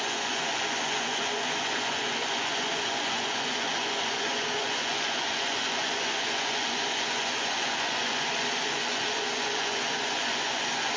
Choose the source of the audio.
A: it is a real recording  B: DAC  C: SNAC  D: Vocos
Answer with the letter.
D